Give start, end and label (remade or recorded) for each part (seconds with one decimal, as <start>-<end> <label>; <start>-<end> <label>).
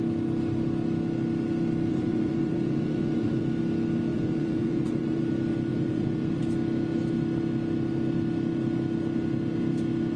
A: 0.0-1.9 recorded; 1.9-3.4 remade; 3.4-4.1 recorded; 4.1-5.2 remade; 5.2-5.7 recorded; 5.7-6.4 remade; 6.4-10.2 recorded